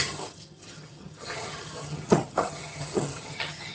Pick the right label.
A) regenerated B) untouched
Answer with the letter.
A